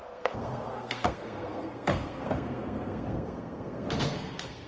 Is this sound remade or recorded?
remade